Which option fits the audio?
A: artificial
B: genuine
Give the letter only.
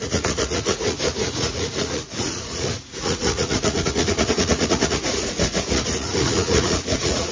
A